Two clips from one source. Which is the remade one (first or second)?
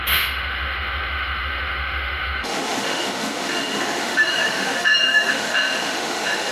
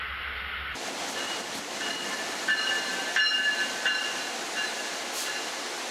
first